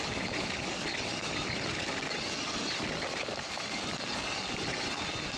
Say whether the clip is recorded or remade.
recorded